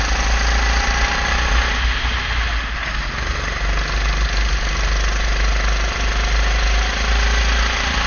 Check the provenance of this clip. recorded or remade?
recorded